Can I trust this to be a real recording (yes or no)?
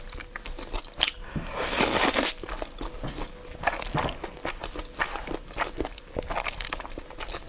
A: yes